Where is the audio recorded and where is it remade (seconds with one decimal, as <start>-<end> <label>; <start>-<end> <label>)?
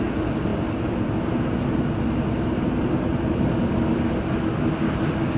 0.0-5.4 recorded